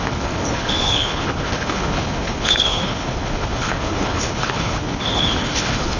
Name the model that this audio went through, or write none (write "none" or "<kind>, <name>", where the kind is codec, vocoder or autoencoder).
codec, HILCodec